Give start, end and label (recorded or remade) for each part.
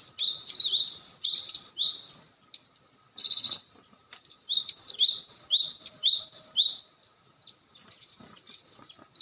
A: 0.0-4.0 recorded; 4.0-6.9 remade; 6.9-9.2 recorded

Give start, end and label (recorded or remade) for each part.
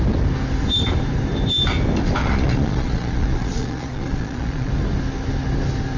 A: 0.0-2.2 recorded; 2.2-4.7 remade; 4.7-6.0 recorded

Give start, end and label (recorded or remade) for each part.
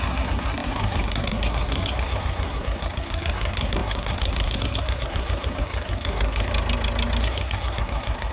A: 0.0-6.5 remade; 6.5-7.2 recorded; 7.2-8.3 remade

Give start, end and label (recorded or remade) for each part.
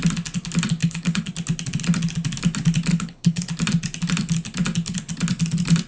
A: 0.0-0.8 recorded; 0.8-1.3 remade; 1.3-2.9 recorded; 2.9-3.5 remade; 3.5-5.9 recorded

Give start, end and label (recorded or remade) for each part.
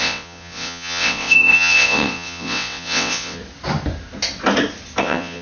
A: 0.0-3.4 remade; 3.4-5.0 recorded; 5.0-5.4 remade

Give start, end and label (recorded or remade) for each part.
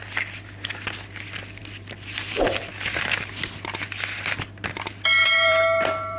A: 0.0-1.6 recorded; 1.6-2.6 remade; 2.6-5.2 recorded; 5.2-6.2 remade